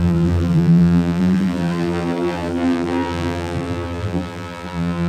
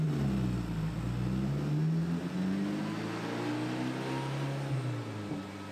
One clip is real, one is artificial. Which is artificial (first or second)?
first